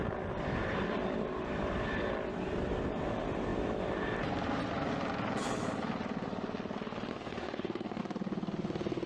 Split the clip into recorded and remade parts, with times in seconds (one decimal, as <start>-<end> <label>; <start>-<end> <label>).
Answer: 0.0-7.1 recorded; 7.1-8.0 remade; 8.0-9.1 recorded